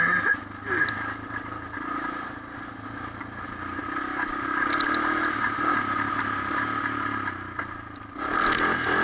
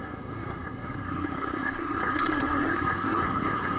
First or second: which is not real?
second